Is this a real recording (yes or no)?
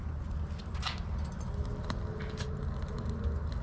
yes